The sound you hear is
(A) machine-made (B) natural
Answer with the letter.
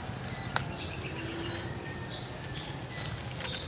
B